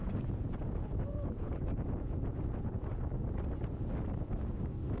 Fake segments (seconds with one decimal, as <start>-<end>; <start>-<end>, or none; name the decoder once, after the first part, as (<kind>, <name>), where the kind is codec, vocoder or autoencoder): 0.0-2.9 (vocoder, Vocos)